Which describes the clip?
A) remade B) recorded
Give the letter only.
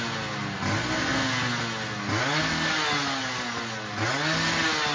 B